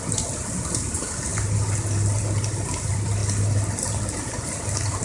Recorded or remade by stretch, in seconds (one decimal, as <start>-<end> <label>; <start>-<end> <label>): 0.0-1.3 remade; 1.3-2.2 recorded; 2.2-3.2 remade; 3.2-4.1 recorded; 4.1-5.0 remade